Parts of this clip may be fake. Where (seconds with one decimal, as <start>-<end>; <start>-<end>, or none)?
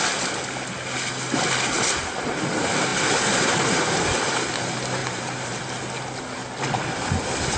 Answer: 2.9-4.3; 5.0-5.6